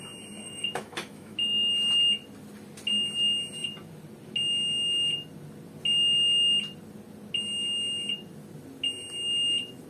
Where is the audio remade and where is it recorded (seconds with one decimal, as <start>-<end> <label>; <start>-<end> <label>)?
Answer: 0.0-0.4 recorded; 0.4-1.7 remade; 1.7-9.9 recorded